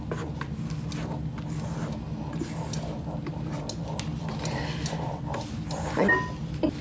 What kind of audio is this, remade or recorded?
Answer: recorded